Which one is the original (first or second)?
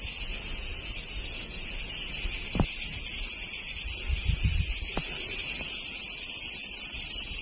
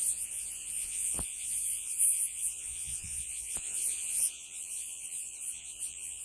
first